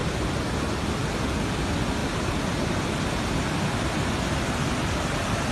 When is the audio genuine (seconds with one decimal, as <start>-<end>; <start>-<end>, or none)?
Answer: 0.0-5.5